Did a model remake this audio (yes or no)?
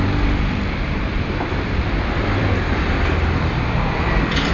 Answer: yes